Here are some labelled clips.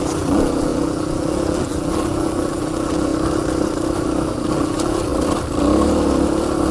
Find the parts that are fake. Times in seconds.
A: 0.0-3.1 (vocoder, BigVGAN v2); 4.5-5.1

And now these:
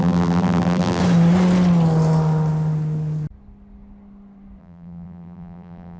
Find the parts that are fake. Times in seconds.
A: 0.0-1.0 (vocoder, BigVGAN v2); 4.6-6.0

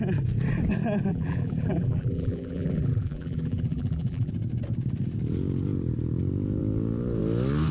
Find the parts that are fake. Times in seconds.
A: 1.1-4.3 (vocoder, BigVGAN v2)

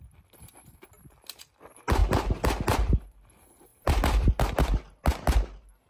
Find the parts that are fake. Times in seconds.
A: none

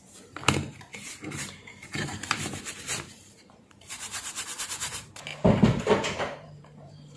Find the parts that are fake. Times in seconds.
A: 0.0-5.3 (vocoder, BigVGAN v2); 5.8-7.2

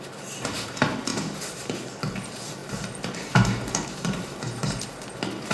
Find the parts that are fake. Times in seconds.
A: 1.1-1.8 (vocoder, BigVGAN v2); 2.6-4.8

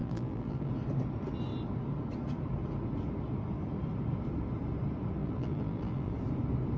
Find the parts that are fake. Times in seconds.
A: 0.0-0.7 (vocoder, BigVGAN v2); 5.2-6.1